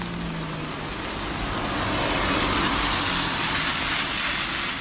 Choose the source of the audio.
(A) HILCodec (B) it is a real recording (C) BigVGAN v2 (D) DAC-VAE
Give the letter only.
B